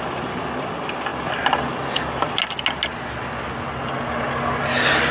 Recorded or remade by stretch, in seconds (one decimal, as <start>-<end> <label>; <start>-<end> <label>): 0.0-5.1 recorded